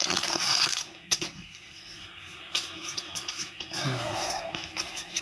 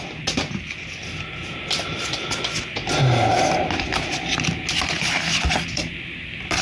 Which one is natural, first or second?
second